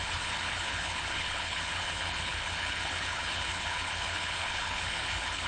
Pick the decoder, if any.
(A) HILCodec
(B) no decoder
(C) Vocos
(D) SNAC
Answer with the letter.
A